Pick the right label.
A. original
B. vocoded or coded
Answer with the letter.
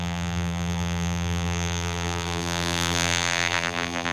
B